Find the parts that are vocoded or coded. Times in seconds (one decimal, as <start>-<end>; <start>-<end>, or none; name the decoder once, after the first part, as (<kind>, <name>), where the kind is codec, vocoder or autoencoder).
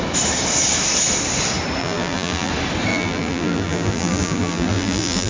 1.8-2.5 (vocoder, BigVGAN v2); 2.9-5.3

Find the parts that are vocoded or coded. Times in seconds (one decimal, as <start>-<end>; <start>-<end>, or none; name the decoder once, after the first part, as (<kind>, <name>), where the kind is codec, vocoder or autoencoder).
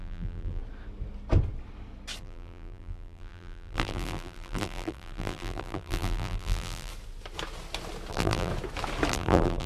0.0-0.6 (vocoder, BigVGAN v2); 2.2-6.9; 8.1-8.5; 9.1-9.7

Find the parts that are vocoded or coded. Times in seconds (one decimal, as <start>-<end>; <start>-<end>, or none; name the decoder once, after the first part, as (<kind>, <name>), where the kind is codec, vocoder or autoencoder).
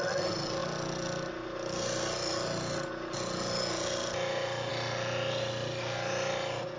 none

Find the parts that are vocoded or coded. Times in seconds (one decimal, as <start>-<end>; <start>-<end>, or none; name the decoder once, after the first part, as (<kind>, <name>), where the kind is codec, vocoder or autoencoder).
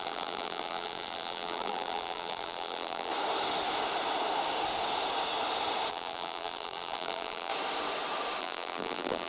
0.0-3.1 (vocoder, BigVGAN v2); 5.9-7.5; 8.4-9.3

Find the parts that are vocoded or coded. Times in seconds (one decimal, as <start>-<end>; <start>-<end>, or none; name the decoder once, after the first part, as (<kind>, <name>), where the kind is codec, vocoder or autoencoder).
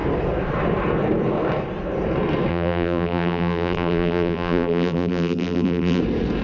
2.5-6.0 (vocoder, BigVGAN v2)